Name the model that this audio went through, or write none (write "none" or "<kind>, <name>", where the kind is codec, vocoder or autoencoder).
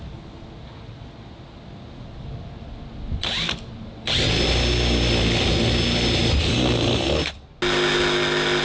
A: none